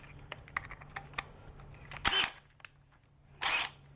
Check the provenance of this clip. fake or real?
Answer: real